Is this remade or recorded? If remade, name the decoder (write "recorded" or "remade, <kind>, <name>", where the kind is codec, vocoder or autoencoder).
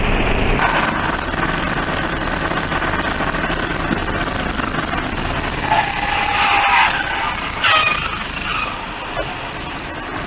recorded